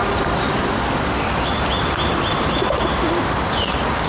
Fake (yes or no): no